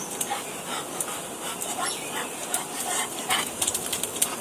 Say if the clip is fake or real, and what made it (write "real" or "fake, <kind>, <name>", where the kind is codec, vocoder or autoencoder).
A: real